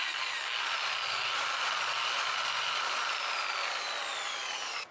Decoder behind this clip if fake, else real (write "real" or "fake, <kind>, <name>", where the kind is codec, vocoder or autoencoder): real